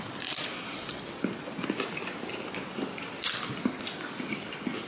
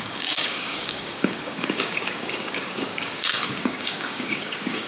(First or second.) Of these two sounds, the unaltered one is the first